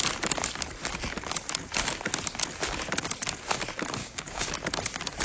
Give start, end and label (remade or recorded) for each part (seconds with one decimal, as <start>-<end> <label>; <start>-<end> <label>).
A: 0.0-4.0 recorded; 4.0-4.5 remade; 4.5-5.2 recorded